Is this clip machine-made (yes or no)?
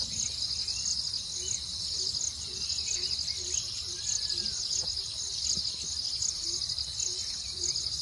no